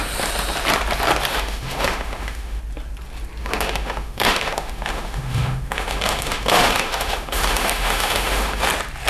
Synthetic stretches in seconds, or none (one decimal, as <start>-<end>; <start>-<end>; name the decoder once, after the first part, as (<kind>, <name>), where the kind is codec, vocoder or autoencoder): 1.3-2.6 (autoencoder, DAC-VAE); 3.4-8.7